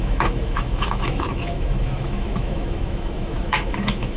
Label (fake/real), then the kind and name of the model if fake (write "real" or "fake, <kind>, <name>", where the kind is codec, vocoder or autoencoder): fake, autoencoder, DAC-VAE